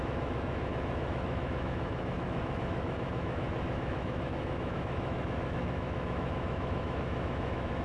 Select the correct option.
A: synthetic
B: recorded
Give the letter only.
A